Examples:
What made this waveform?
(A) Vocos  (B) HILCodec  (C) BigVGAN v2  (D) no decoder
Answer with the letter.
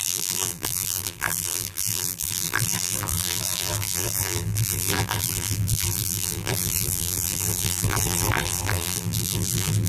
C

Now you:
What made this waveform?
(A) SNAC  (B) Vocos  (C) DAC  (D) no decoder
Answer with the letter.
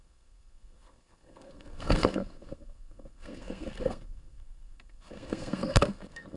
A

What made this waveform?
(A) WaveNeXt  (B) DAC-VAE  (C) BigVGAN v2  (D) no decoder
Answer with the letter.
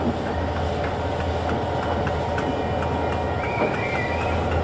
D